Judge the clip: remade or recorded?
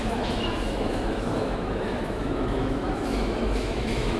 remade